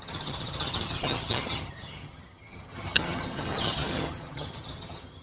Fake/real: fake